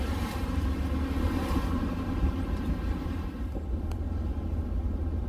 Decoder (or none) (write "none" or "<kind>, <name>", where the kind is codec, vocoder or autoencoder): vocoder, BigVGAN v2